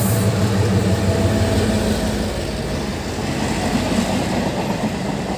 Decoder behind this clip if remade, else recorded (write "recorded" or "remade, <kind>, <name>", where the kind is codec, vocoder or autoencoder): recorded